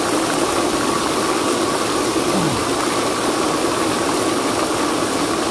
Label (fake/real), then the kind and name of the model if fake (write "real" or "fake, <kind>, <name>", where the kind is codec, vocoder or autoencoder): real